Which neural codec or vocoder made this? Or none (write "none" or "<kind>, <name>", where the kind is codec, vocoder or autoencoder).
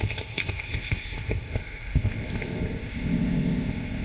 codec, ZipCodec